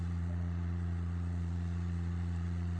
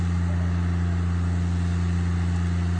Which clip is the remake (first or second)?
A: first